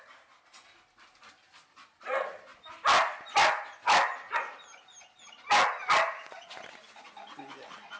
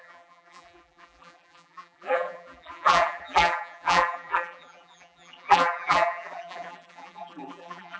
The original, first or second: first